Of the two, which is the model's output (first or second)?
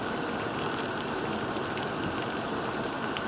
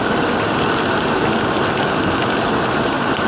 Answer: second